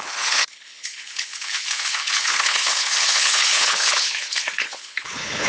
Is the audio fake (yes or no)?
yes